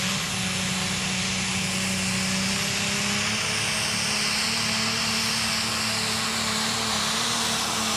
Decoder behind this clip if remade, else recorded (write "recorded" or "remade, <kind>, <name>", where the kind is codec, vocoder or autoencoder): recorded